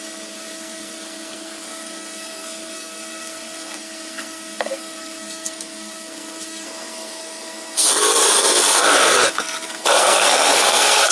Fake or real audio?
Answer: fake